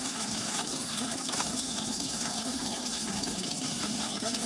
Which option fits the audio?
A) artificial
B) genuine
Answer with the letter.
A